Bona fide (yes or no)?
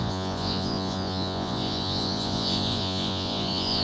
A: no